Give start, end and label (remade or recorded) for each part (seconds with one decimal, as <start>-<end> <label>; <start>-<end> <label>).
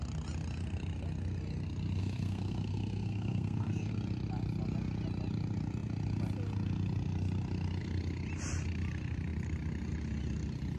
0.0-2.0 recorded; 2.0-3.9 remade; 3.9-10.8 recorded